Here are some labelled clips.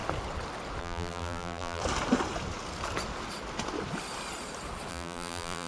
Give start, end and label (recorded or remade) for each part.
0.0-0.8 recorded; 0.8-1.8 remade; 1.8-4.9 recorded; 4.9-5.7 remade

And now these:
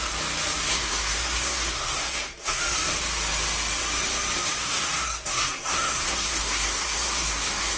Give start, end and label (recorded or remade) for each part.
0.0-0.7 recorded; 0.7-2.6 remade; 2.6-4.6 recorded; 4.6-7.8 remade

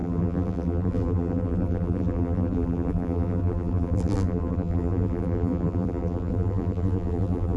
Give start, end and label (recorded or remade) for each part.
0.0-7.6 remade

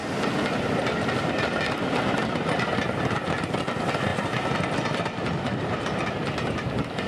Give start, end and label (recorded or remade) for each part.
0.0-7.1 recorded

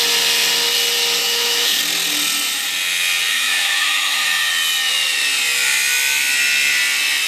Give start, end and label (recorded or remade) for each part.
0.0-1.2 recorded; 1.2-1.8 remade; 1.8-3.3 recorded; 3.3-4.5 remade; 4.5-7.3 recorded

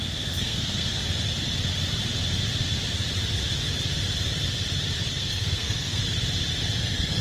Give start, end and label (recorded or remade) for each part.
0.0-1.0 remade; 1.0-5.1 recorded; 5.1-6.0 remade; 6.0-6.8 recorded; 6.8-7.2 remade

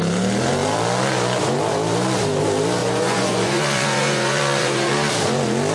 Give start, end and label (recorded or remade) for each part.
0.0-2.8 recorded; 2.8-4.9 remade; 4.9-5.7 recorded